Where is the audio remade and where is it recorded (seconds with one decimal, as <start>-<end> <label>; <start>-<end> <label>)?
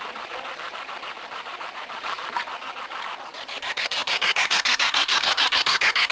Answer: 0.0-3.6 recorded; 3.6-6.1 remade